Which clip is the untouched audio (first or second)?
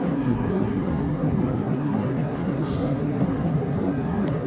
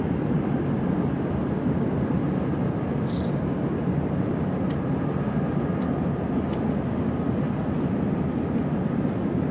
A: second